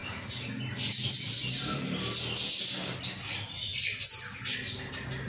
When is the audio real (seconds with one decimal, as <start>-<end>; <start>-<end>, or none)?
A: 0.0-5.3